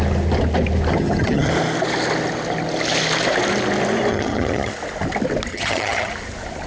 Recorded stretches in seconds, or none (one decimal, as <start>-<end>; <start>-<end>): 0.0-0.9; 1.5-4.1; 4.7-5.5; 6.1-6.7